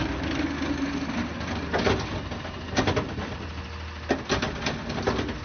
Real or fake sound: real